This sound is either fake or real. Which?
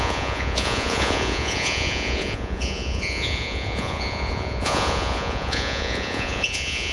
fake